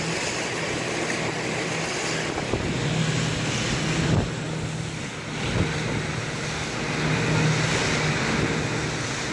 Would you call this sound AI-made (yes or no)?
no